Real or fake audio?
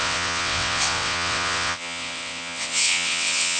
fake